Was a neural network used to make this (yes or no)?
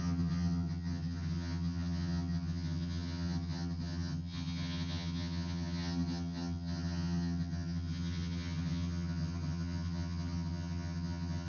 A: yes